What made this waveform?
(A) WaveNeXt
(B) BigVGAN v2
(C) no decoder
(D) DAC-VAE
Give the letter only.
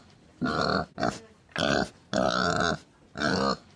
C